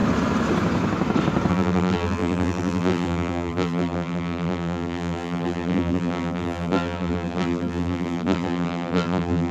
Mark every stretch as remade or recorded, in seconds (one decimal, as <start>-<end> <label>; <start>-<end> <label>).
0.0-1.5 recorded; 1.5-9.5 remade